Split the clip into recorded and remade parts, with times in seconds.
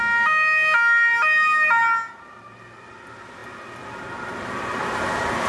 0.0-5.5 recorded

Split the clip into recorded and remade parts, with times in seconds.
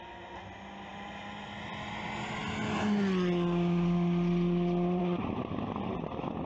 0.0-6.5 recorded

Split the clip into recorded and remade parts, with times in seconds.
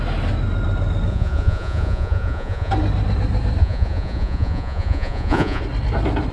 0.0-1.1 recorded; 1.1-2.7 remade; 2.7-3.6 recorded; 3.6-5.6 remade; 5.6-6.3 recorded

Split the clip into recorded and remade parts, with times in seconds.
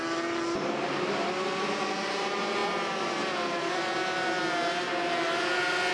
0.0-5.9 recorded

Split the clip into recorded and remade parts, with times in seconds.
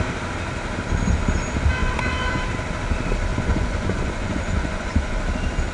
0.0-1.8 recorded; 1.8-2.4 remade; 2.4-3.3 recorded; 3.3-5.2 remade; 5.2-5.7 recorded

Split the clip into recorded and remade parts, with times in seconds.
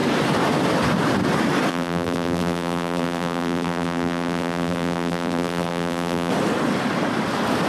0.0-1.7 recorded; 1.7-6.3 remade; 6.3-7.7 recorded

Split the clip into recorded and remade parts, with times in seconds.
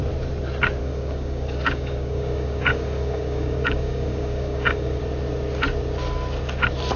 0.0-0.8 recorded; 0.8-5.0 remade; 5.0-7.0 recorded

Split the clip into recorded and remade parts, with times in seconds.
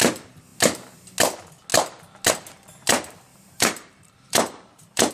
0.0-3.3 recorded; 3.3-5.1 remade